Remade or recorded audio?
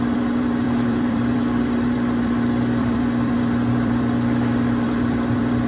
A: remade